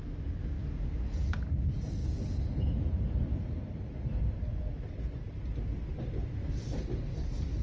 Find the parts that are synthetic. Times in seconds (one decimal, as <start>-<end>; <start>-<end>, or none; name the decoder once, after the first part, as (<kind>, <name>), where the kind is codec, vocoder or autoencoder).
none